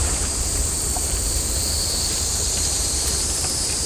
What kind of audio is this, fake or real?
fake